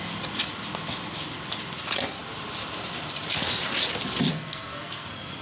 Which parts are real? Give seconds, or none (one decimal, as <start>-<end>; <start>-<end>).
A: 0.0-4.3